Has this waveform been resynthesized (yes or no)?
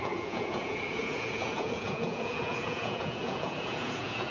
yes